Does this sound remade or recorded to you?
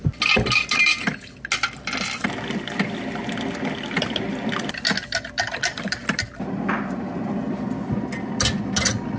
recorded